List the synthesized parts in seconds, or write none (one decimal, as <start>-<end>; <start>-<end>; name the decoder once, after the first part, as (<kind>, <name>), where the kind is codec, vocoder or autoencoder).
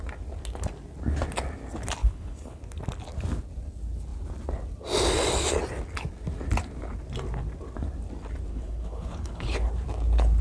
2.0-2.6 (codec, HILCodec); 8.5-9.7